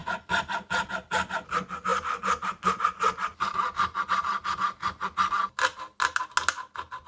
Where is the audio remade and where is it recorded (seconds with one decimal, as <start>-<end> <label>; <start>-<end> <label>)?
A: 0.0-7.1 recorded